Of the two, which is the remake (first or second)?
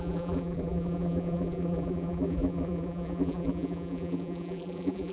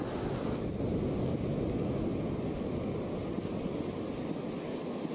first